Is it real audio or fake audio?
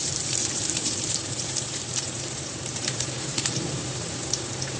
fake